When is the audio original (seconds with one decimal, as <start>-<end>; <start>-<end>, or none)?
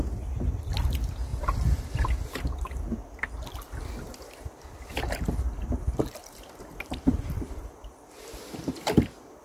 0.0-1.3; 2.1-4.9